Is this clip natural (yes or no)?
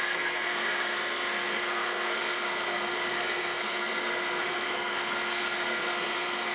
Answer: no